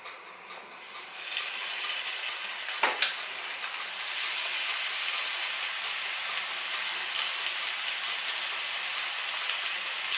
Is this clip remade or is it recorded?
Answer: recorded